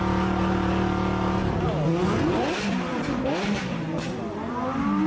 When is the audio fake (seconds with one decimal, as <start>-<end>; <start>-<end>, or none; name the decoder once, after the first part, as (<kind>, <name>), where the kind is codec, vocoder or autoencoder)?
1.4-4.5 (vocoder, BigVGAN v2)